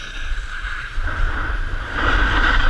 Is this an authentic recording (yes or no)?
no